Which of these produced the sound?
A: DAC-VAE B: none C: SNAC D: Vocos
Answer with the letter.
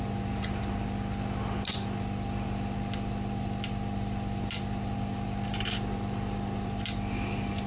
B